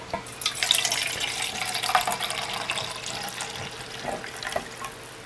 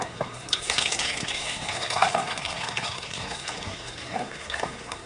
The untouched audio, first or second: first